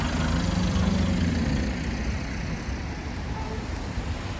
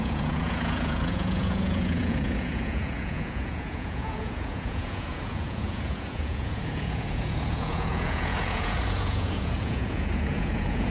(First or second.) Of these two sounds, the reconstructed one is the second